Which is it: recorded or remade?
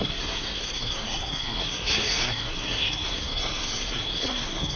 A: remade